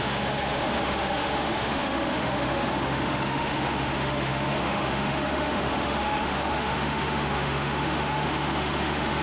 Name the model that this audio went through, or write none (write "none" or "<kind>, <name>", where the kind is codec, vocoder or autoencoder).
autoencoder, DAC-VAE